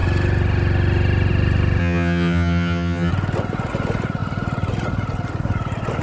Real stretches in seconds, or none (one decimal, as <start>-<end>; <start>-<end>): 0.0-1.8; 3.1-6.0